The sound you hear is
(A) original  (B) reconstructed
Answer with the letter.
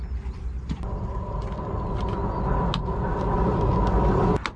A